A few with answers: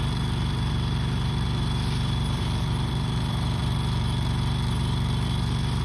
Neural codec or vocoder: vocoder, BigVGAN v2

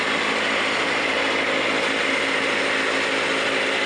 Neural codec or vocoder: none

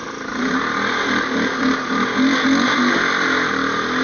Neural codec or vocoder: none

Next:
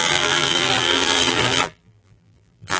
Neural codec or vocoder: vocoder, BigVGAN v2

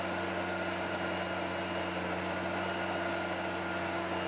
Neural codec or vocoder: none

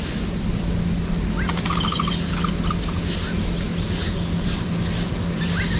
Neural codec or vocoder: none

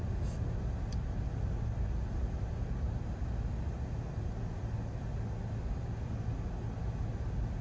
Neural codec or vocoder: none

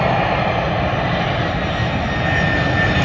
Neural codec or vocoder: none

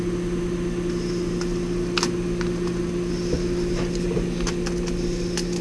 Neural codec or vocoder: none